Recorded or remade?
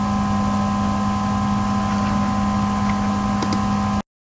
recorded